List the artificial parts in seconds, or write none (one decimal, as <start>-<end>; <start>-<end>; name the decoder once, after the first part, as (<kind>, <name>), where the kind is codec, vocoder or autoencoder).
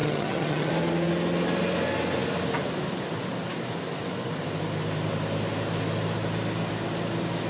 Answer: 0.0-0.7 (vocoder, HiFi-GAN)